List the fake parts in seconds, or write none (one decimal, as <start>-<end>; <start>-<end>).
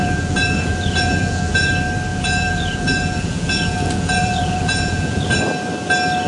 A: 0.0-1.7; 2.1-5.4